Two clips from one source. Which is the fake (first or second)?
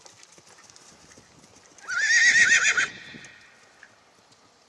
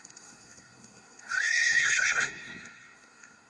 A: second